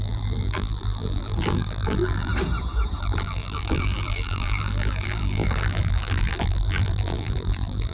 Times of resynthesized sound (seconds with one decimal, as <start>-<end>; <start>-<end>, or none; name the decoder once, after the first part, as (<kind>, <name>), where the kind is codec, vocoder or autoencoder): 0.0-2.3 (vocoder, BigVGAN v2); 3.0-7.9